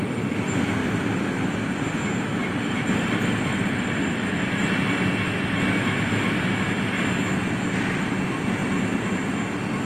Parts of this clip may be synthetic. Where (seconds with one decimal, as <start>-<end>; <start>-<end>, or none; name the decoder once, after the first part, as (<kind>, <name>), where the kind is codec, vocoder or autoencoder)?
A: 0.8-1.4 (vocoder, BigVGAN v2); 2.4-4.7